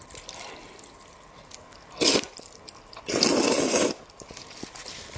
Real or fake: real